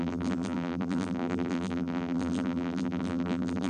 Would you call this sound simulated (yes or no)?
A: yes